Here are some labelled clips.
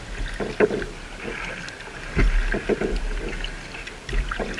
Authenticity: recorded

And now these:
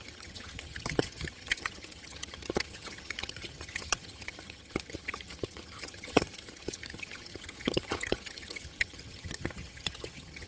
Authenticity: remade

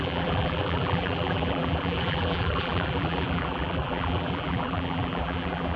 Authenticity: remade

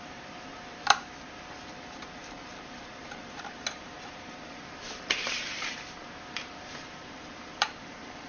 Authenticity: remade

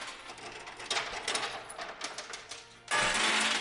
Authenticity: recorded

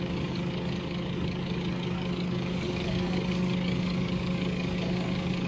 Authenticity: remade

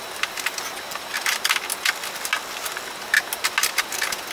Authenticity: recorded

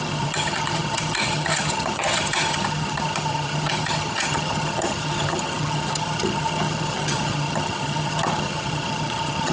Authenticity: remade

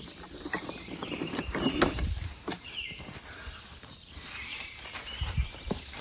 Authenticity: remade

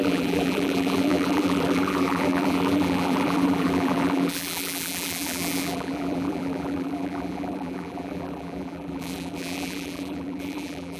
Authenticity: remade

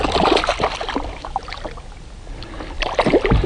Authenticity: recorded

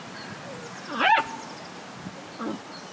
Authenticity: recorded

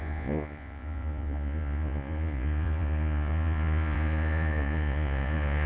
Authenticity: remade